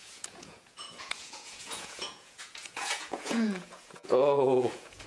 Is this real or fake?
fake